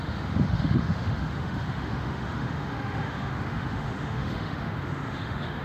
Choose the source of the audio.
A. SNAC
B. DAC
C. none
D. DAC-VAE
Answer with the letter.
D